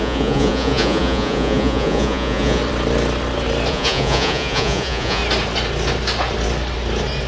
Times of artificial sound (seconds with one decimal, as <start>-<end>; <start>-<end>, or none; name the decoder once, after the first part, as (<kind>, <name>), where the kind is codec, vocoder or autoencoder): 0.0-2.6 (vocoder, Vocos); 3.7-5.2